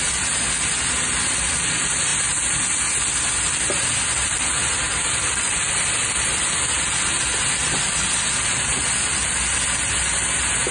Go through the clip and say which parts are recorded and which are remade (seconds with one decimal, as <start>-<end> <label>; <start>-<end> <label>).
0.0-10.7 recorded